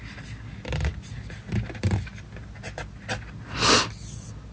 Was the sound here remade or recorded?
recorded